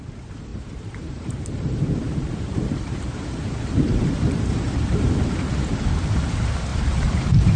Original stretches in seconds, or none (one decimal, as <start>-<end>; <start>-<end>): 0.0-0.5; 5.1-6.7